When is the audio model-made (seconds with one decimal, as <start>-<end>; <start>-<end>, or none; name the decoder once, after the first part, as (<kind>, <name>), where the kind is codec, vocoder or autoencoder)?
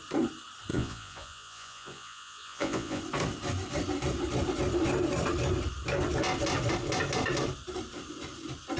0.7-3.0 (vocoder, Vocos)